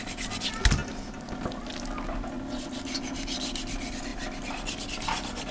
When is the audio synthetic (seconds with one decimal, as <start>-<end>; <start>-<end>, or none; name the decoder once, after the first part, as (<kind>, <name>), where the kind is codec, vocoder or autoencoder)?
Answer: none